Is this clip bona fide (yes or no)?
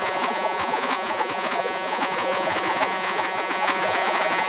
no